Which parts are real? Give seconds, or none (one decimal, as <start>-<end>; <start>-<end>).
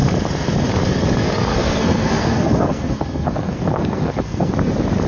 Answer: 0.0-1.5; 4.5-5.1